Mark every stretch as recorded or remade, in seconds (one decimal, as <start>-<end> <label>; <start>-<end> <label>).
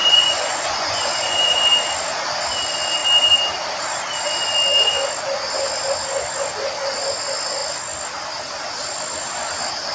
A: 0.0-1.6 remade; 1.6-9.9 recorded